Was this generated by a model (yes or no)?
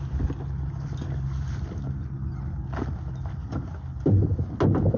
no